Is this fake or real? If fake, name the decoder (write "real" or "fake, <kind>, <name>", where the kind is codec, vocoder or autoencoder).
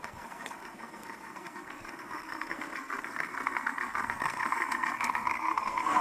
fake, codec, SNAC